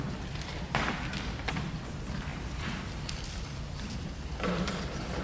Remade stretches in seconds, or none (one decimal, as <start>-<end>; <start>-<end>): 2.3-4.1